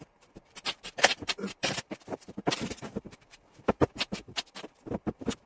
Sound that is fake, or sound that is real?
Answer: fake